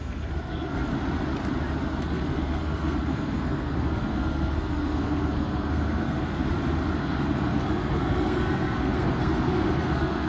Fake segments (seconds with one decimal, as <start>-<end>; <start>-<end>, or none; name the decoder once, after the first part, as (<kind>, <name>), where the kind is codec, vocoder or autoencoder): 0.0-0.9 (codec, SNAC); 2.0-6.5; 7.0-10.3

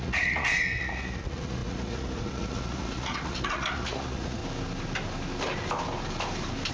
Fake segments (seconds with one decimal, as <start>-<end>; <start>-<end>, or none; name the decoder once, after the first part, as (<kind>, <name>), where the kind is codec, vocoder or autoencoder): 0.0-4.4 (vocoder, Vocos)

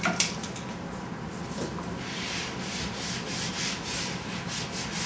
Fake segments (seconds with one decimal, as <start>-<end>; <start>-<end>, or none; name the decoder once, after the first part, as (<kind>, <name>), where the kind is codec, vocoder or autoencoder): none

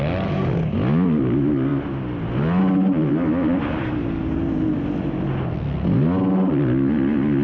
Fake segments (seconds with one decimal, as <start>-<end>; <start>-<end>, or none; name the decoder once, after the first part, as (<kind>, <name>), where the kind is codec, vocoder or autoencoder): none